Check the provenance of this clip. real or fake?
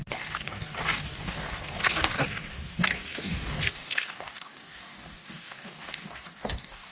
fake